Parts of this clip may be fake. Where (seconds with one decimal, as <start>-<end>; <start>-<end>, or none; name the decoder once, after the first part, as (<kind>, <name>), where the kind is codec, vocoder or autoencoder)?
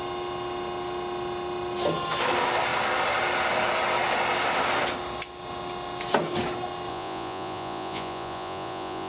6.9-9.1 (vocoder, Vocos)